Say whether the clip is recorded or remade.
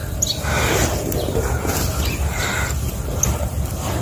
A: recorded